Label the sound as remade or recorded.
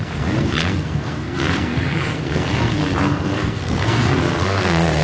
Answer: remade